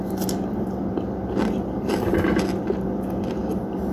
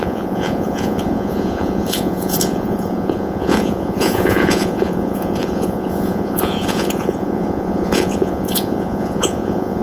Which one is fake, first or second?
second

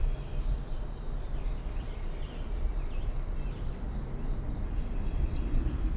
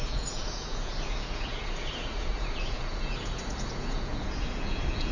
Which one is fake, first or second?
second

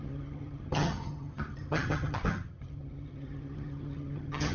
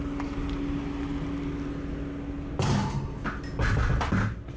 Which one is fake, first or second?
first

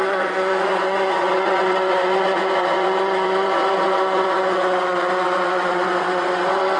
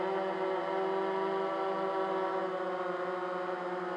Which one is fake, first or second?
first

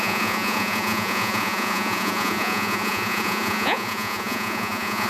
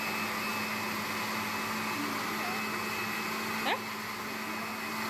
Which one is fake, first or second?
first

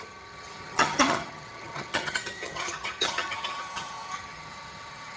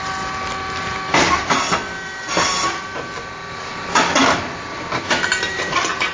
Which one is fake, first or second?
first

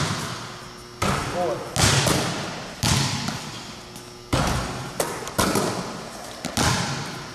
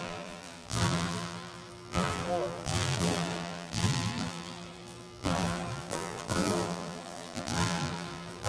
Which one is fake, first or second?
second